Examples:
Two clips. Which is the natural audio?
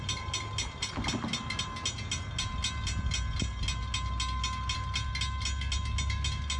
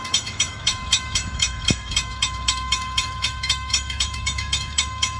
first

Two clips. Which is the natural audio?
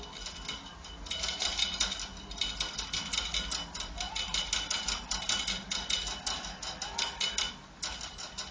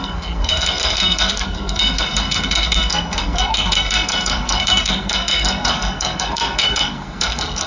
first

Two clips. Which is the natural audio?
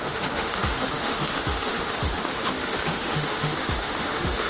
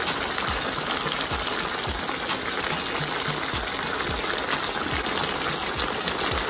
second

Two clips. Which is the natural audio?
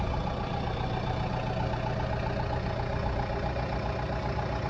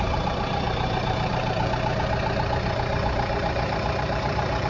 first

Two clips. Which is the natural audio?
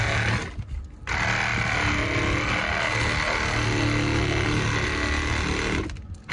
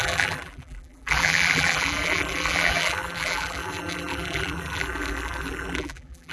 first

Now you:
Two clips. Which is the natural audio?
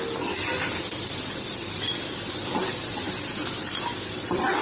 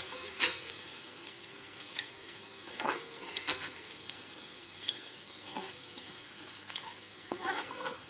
first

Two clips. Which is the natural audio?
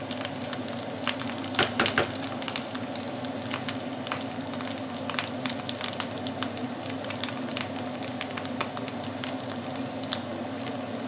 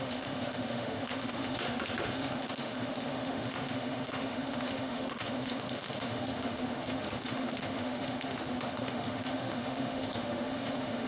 first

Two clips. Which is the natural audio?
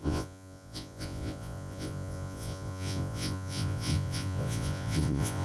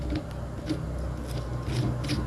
second